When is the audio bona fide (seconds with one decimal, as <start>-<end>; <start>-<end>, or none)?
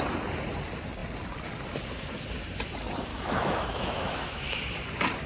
0.0-3.1; 4.6-5.3